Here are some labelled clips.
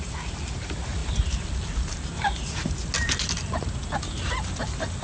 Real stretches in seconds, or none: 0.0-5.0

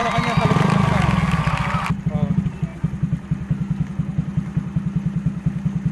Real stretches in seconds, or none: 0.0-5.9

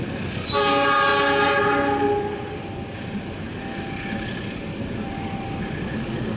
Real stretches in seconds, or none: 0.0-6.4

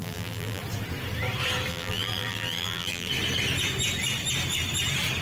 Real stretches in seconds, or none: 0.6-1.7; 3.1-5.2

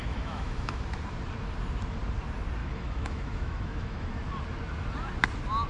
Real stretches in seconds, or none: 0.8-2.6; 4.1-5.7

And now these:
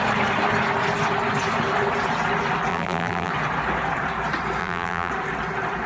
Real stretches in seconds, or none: 0.0-2.7; 3.3-4.6; 5.1-5.9